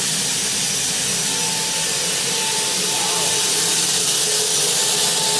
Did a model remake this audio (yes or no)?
no